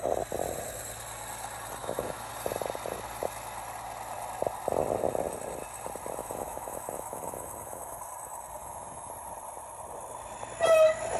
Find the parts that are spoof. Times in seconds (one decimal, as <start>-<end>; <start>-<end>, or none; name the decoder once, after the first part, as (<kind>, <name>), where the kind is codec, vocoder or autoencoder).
1.8-2.3 (autoencoder, DAC-VAE); 6.2-8.0; 8.6-9.1